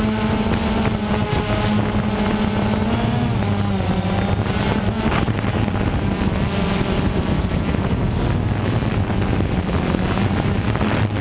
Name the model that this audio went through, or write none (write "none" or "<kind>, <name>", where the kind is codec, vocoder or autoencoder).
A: none